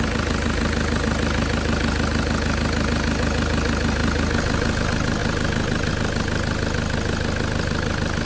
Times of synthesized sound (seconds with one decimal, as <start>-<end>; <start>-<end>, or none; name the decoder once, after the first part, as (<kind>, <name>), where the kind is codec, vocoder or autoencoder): none